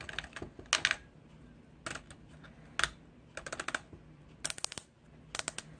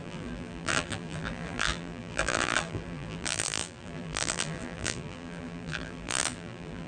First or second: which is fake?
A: second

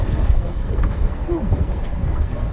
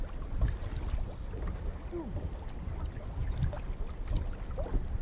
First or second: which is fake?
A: first